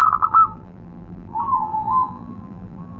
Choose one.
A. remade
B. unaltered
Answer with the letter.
A